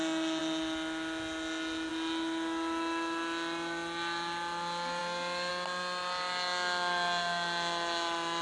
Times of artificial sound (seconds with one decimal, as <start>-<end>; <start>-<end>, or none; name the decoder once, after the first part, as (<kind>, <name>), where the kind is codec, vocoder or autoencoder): none